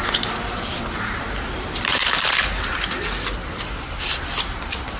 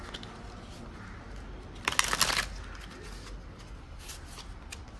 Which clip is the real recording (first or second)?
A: second